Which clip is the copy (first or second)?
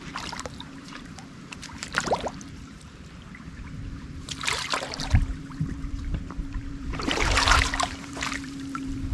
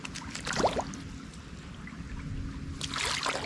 first